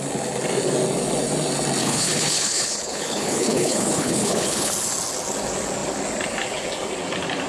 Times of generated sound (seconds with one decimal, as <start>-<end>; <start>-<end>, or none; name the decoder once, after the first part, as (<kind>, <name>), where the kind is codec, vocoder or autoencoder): 1.8-4.7 (codec, HILCodec)